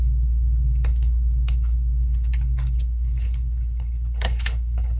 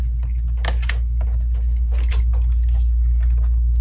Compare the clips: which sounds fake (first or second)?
first